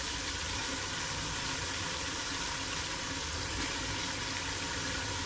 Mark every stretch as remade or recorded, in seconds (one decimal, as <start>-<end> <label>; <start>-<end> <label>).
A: 0.0-5.3 recorded